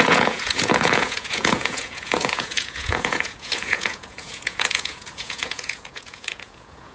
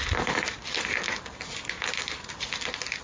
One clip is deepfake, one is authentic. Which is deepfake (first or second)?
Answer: first